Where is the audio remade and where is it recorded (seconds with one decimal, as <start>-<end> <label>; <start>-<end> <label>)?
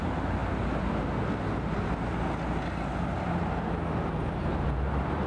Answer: 0.0-4.5 recorded; 4.5-5.3 remade